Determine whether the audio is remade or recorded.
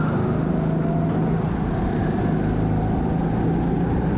recorded